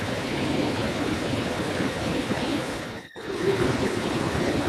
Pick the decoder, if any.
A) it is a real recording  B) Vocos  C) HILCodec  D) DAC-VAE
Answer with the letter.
C